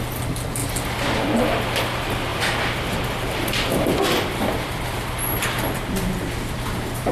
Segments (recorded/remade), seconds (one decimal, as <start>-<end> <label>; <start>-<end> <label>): 0.0-2.3 recorded; 2.3-6.2 remade; 6.2-7.1 recorded